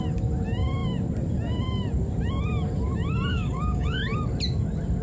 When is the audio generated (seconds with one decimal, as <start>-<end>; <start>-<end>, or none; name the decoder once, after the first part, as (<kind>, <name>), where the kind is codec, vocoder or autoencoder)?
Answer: 3.3-4.0 (codec, DAC)